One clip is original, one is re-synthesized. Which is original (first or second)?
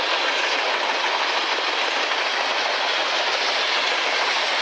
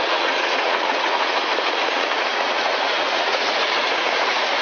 first